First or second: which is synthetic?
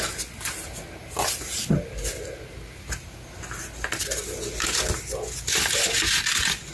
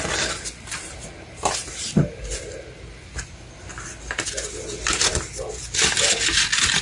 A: second